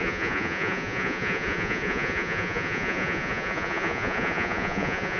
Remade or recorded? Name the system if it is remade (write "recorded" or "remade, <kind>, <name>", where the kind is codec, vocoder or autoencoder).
remade, vocoder, Vocos